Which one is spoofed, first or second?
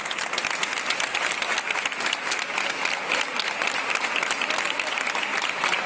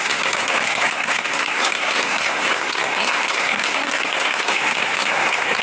second